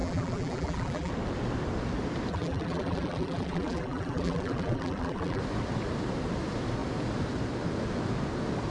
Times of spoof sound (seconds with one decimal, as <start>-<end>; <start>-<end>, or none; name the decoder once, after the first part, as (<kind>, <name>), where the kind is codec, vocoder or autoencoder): 0.0-1.1 (vocoder, BigVGAN v2); 2.3-5.4

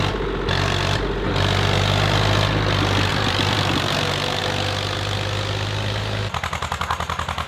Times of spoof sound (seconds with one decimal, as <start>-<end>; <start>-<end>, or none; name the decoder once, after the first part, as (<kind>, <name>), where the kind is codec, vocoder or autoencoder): 3.1-4.4 (vocoder, BigVGAN v2)

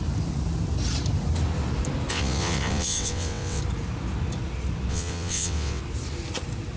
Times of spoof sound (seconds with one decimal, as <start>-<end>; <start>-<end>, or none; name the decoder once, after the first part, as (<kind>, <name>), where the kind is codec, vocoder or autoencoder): 2.1-3.6 (vocoder, WaveNeXt); 4.9-5.8

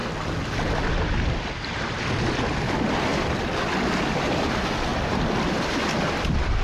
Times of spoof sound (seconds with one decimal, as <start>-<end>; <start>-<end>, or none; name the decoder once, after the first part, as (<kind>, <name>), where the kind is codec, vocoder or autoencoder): 2.1-3.1 (vocoder, BigVGAN v2); 3.7-6.6

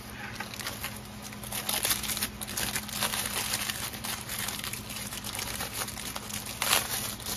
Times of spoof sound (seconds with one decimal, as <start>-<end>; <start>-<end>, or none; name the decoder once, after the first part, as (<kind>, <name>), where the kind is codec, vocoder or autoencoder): 3.1-6.1 (vocoder, BigVGAN v2)

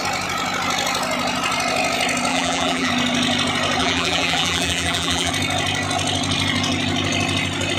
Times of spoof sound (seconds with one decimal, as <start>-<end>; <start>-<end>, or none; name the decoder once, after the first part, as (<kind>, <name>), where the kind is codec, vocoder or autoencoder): 2.3-2.9 (vocoder, BigVGAN v2); 3.8-5.3

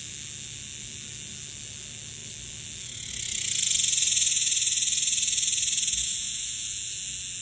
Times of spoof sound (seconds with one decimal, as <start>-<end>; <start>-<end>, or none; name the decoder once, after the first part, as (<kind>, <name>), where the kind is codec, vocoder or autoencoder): none

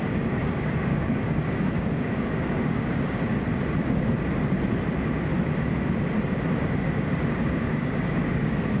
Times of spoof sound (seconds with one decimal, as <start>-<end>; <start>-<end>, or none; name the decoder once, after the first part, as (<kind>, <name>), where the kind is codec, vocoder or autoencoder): 0.0-3.3 (codec, DAC); 7.4-8.8